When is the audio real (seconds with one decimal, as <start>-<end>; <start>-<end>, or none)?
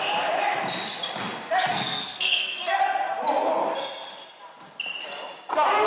0.0-1.7; 2.8-5.9